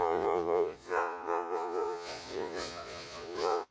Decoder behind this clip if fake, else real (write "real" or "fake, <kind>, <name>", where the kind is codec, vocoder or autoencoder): fake, vocoder, Vocos